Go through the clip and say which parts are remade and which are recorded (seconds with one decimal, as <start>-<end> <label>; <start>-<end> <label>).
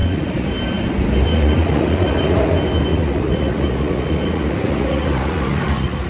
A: 0.0-0.5 remade; 0.5-1.3 recorded; 1.3-2.5 remade; 2.5-2.9 recorded; 2.9-6.1 remade